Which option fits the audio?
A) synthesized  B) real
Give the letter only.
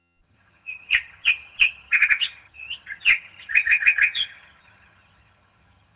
A